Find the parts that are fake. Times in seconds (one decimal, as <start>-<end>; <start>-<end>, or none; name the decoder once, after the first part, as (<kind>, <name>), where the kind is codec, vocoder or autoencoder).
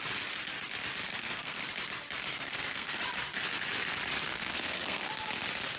1.1-1.6 (codec, SNAC); 2.3-3.0; 4.3-5.1